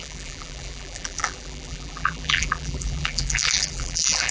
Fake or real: fake